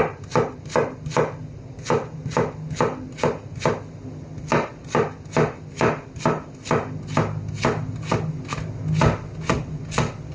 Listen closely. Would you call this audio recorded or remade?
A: recorded